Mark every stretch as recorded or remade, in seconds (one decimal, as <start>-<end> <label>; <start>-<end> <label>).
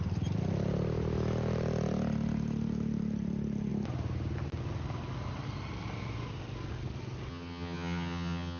0.0-7.3 recorded; 7.3-8.6 remade